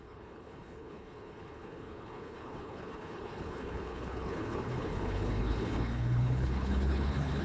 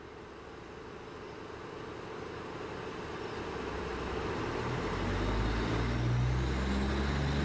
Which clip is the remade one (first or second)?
first